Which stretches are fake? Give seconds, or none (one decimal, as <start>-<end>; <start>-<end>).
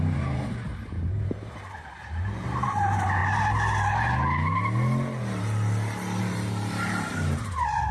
0.0-3.2; 6.2-7.9